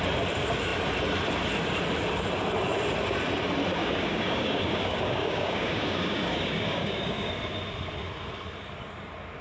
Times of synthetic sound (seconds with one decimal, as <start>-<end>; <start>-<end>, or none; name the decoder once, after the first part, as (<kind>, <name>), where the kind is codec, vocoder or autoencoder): 3.8-7.3 (codec, DAC)